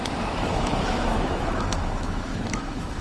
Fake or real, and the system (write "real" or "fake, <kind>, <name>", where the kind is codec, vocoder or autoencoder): fake, autoencoder, DAC-VAE